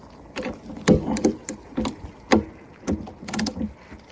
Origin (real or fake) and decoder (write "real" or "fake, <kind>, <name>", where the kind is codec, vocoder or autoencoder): real